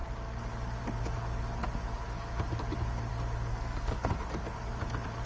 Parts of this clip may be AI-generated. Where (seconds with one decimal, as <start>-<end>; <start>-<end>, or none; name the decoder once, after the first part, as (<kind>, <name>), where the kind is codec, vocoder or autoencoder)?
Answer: 3.5-4.1 (codec, SNAC)